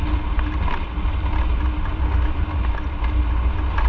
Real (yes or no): yes